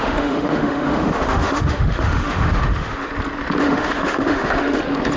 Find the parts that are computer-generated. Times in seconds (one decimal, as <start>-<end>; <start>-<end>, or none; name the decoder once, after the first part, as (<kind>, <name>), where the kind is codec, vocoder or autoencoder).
0.0-3.1 (autoencoder, DAC-VAE); 3.6-4.8